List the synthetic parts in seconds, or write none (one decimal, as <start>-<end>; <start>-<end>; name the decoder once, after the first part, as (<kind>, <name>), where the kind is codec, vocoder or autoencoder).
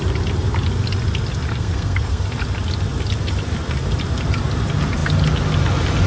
1.5-2.2 (codec, SNAC)